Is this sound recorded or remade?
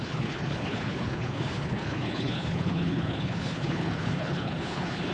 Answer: remade